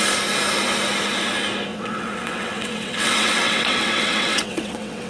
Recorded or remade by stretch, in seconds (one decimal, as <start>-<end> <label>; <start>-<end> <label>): 0.0-1.7 recorded; 1.7-5.1 remade